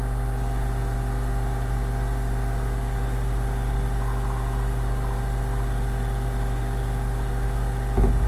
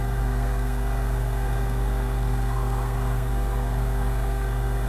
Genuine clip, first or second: first